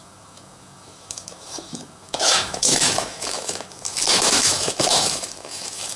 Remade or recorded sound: remade